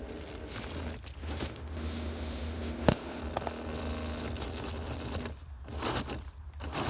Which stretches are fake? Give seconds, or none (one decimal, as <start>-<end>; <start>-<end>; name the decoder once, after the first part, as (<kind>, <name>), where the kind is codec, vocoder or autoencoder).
1.2-3.2 (autoencoder, DAC-VAE)